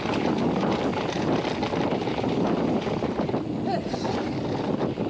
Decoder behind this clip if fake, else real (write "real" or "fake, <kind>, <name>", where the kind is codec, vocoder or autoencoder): real